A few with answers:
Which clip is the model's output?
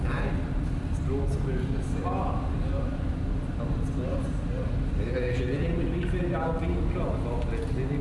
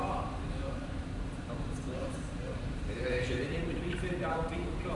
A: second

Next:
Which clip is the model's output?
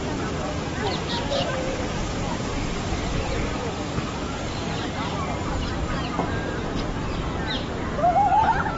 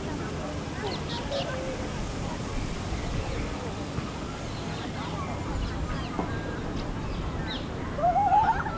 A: first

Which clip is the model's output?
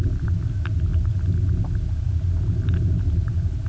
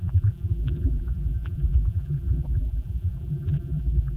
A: second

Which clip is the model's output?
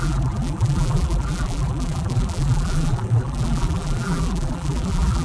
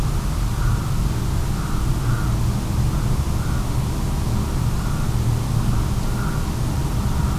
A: first